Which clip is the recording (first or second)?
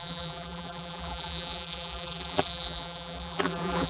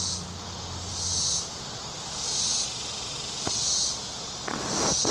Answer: second